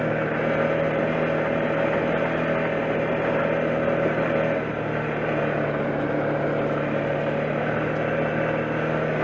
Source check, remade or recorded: recorded